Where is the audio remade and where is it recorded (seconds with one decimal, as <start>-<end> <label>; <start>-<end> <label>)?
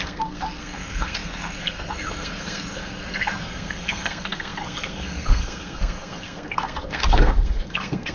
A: 0.0-8.1 remade